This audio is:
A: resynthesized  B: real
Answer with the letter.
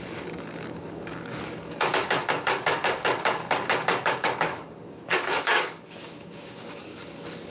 A